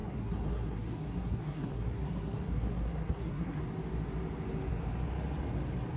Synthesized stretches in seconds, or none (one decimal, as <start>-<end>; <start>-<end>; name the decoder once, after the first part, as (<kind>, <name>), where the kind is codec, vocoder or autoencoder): 0.0-3.6 (codec, SNAC)